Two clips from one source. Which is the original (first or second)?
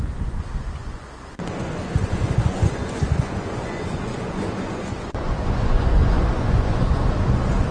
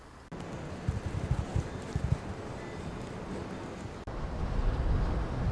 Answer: second